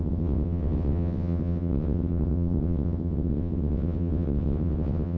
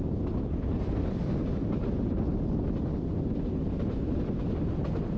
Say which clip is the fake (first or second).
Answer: first